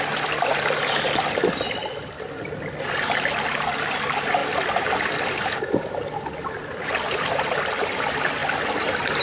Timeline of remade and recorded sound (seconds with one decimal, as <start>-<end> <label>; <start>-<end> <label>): 0.0-9.2 recorded